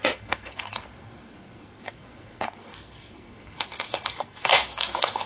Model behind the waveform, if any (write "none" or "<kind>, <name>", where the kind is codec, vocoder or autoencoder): codec, SNAC